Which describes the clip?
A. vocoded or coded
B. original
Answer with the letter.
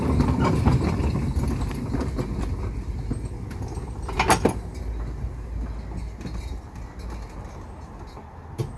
B